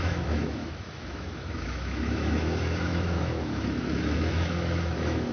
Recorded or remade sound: remade